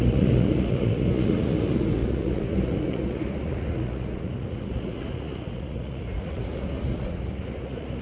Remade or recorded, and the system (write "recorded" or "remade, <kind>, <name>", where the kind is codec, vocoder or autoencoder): remade, vocoder, Vocos